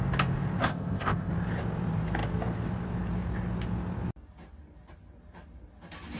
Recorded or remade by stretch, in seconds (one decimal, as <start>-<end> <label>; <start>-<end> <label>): 0.0-0.7 recorded; 0.7-1.3 remade; 1.3-6.2 recorded